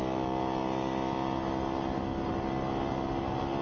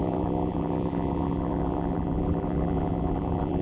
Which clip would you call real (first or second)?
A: first